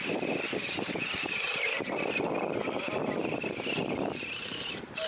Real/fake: real